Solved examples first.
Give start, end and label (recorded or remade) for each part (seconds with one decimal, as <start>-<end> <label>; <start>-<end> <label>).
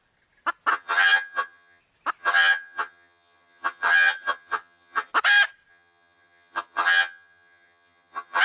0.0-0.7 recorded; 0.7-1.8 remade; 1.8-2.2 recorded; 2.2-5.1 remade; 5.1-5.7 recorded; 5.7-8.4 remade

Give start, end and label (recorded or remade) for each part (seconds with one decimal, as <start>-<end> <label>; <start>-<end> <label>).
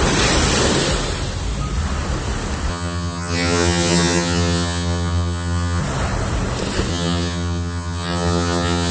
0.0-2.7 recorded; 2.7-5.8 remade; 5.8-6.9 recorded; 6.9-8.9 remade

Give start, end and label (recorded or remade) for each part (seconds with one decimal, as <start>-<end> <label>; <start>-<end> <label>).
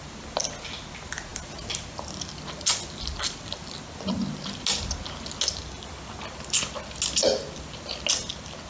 0.0-8.7 recorded